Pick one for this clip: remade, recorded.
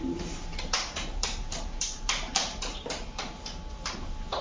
remade